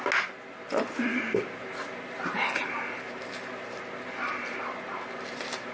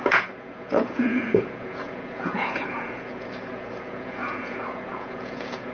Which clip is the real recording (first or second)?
first